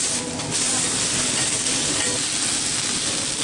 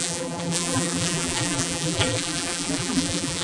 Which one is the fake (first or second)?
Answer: second